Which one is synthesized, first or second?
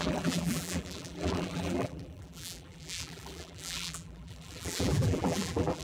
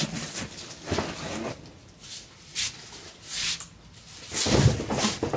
first